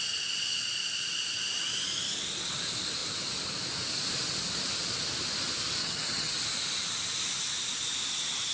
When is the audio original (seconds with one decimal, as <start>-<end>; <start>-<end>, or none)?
0.0-5.8; 6.3-8.5